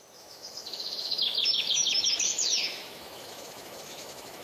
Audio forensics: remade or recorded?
remade